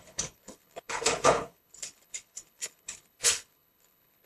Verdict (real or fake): fake